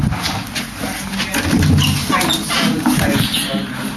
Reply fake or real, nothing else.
real